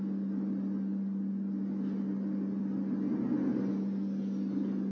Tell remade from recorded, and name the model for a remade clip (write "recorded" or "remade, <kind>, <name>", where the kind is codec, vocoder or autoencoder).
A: recorded